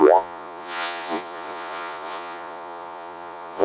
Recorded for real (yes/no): no